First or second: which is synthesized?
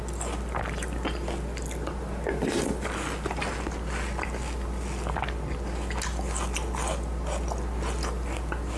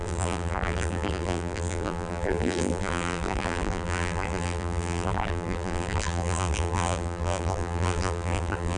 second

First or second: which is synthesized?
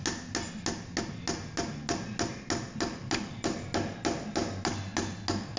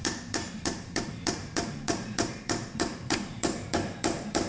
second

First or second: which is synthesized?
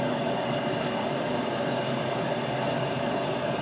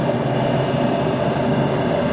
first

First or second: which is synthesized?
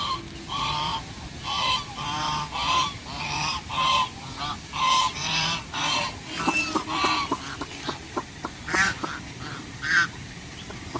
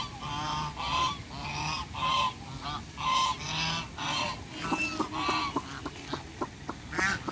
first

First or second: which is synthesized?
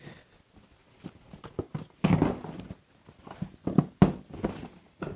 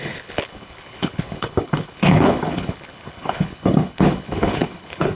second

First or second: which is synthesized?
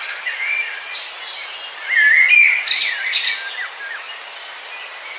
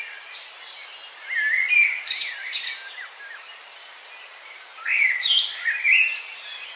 second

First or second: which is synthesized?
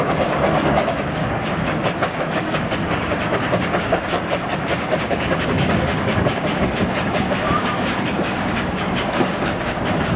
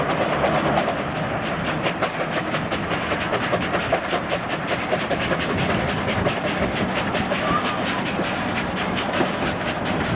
first